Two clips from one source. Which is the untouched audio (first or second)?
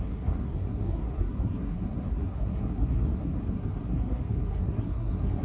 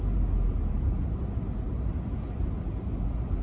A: second